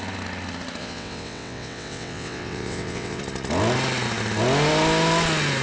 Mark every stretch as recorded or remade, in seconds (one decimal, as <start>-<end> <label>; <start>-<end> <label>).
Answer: 0.0-0.8 recorded; 0.8-3.2 remade; 3.2-5.6 recorded